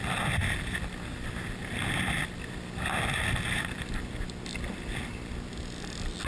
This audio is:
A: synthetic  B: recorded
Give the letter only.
B